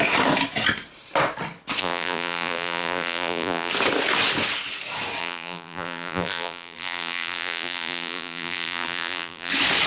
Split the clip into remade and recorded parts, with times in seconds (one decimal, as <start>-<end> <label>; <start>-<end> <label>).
0.0-1.8 recorded; 1.8-3.7 remade; 3.7-5.2 recorded; 5.2-9.5 remade; 9.5-9.9 recorded